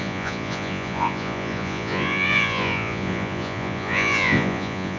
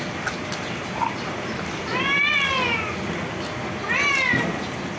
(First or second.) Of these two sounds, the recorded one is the second